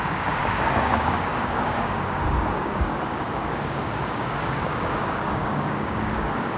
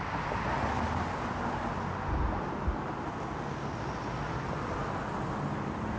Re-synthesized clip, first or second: first